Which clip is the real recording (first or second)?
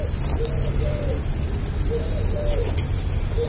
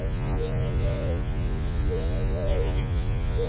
first